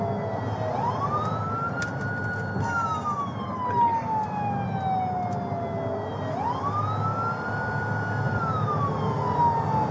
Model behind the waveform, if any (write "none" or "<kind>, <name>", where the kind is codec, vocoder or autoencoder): none